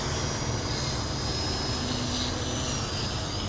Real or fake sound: real